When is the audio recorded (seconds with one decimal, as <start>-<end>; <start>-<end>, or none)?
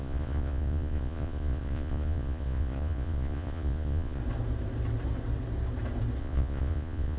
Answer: 4.2-6.2